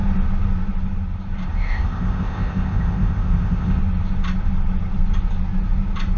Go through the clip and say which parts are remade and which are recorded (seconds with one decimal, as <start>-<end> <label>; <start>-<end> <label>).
0.0-1.5 recorded; 1.5-3.8 remade; 3.8-6.2 recorded